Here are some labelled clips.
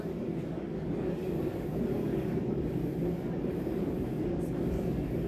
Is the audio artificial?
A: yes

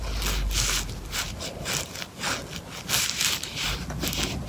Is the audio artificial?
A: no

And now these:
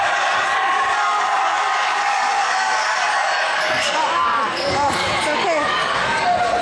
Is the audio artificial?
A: yes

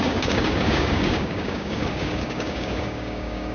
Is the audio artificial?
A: yes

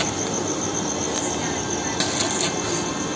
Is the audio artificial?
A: no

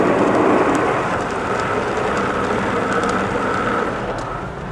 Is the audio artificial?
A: no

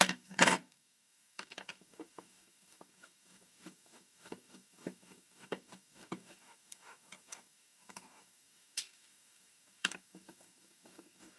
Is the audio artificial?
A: yes